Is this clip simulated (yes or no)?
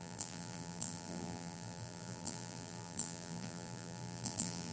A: yes